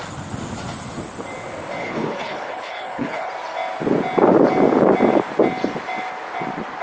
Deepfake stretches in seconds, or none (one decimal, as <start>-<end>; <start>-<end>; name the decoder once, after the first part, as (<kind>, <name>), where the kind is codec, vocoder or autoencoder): 1.8-3.3 (codec, HILCodec)